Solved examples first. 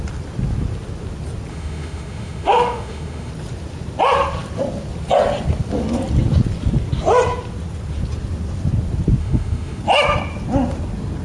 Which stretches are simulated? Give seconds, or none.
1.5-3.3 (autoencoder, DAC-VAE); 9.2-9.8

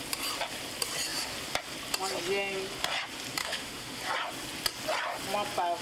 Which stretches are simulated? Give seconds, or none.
3.4-4.0 (autoencoder, DAC-VAE)